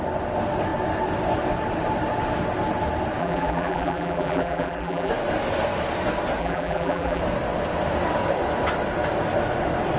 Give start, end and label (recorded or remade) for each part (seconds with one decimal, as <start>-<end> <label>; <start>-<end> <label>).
0.0-3.2 recorded; 3.2-5.1 remade; 5.1-6.4 recorded; 6.4-7.2 remade; 7.2-10.0 recorded